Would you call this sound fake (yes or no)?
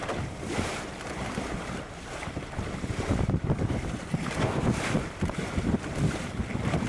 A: yes